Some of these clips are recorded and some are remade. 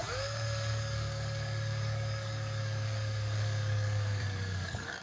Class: remade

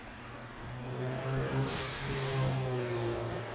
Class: remade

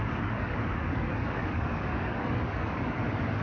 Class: remade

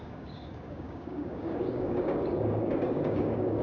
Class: remade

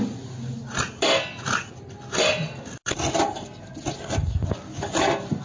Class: recorded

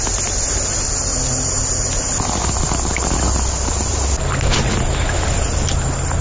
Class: recorded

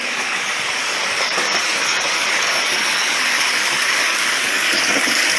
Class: remade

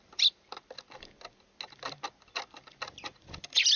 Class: recorded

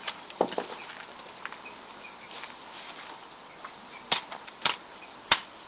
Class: recorded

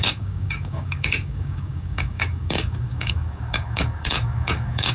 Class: remade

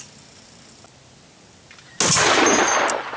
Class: recorded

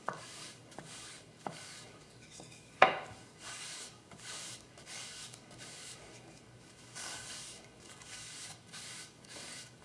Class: remade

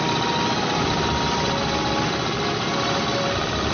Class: recorded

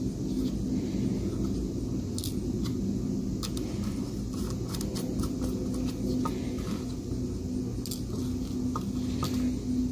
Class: recorded